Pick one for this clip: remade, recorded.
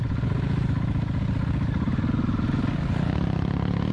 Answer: recorded